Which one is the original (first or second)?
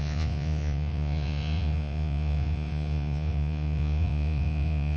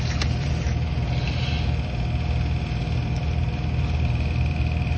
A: second